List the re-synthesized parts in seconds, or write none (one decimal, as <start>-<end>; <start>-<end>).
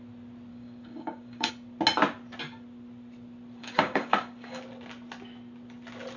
0.5-1.5; 3.6-4.6